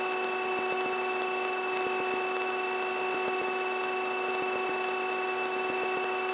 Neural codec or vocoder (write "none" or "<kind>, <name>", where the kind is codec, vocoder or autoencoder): none